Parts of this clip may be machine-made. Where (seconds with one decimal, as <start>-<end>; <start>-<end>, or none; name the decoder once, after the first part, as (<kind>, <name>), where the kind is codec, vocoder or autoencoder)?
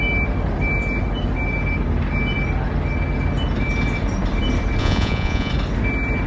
4.8-5.5 (vocoder, Vocos)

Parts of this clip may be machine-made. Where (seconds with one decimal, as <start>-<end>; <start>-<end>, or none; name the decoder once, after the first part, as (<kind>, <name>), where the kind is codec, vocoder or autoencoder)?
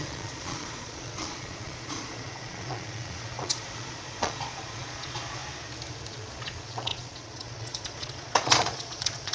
0.0-5.4 (vocoder, Vocos); 6.1-9.3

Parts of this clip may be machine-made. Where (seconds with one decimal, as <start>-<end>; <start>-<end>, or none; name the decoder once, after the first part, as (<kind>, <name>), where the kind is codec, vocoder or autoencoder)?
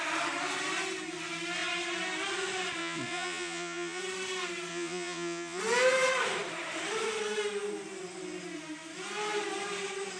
2.8-4.0 (vocoder, Vocos); 4.7-5.6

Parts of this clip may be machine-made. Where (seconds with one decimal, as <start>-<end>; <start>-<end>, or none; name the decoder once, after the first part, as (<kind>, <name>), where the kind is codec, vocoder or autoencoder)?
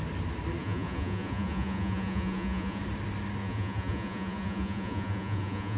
0.6-2.8 (vocoder, Vocos); 3.4-5.8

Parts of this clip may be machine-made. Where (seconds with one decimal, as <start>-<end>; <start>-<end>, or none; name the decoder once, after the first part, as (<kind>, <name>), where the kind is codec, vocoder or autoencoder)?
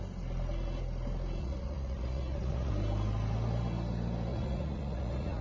1.4-2.7 (vocoder, Vocos); 4.3-5.4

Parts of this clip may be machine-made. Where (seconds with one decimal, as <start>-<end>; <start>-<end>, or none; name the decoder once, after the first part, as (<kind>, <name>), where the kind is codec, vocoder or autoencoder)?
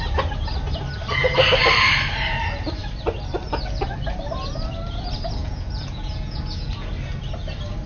5.4-6.9 (vocoder, Vocos)